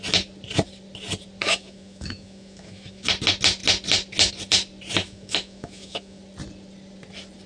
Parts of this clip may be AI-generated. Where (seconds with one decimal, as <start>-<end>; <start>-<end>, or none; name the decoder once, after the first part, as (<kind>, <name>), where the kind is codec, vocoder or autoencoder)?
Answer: 1.4-3.1 (autoencoder, DAC-VAE); 5.0-6.2